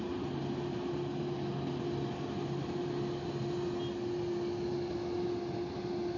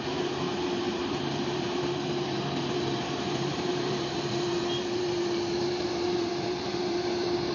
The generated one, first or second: second